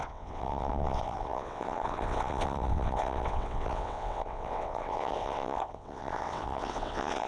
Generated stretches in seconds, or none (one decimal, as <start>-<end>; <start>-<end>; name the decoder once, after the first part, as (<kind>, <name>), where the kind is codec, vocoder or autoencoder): 0.0-7.3 (vocoder, WaveNeXt)